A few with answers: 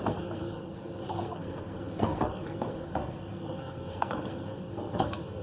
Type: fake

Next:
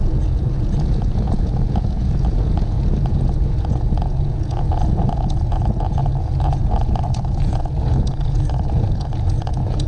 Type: fake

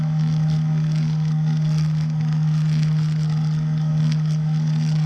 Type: fake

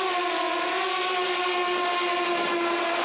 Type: real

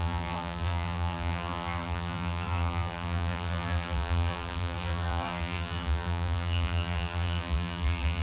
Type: fake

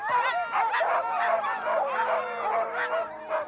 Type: real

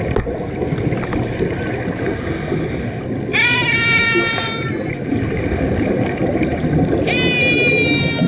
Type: real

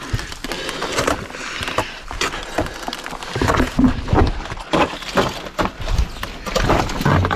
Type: real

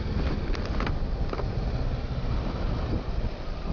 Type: real